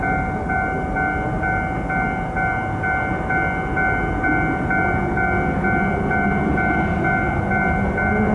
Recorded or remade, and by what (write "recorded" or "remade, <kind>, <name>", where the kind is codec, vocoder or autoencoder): recorded